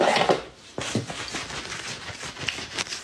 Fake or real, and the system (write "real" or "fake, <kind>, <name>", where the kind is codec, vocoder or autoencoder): real